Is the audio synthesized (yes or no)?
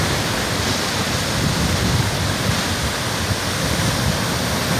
no